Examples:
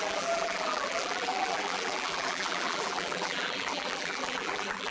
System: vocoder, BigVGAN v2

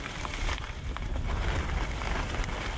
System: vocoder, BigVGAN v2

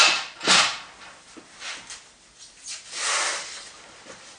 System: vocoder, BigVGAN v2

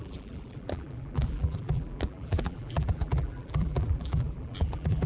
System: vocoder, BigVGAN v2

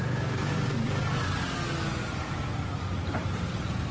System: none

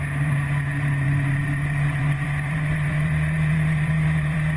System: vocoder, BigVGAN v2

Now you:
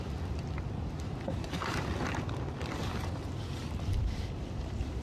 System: vocoder, BigVGAN v2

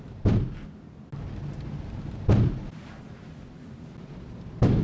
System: none